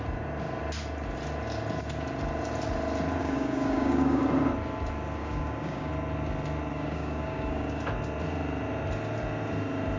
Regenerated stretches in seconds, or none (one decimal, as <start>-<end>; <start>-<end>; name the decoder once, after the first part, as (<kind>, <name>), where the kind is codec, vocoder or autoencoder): 3.2-4.2 (codec, DAC); 5.2-5.9; 6.7-7.8